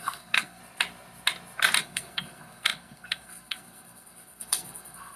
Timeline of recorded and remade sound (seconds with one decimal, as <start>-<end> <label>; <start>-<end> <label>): 0.0-0.6 remade; 0.6-1.8 recorded; 1.8-5.2 remade